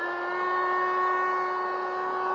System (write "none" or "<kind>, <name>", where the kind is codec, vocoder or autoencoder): none